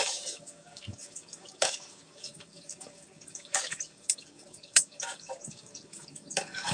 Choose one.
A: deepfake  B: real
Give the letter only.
A